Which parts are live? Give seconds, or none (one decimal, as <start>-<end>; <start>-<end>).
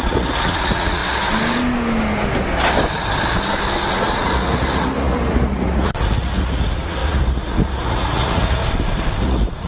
1.0-3.9; 8.6-9.2